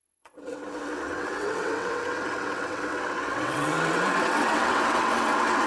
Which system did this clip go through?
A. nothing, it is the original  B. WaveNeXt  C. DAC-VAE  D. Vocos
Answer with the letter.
B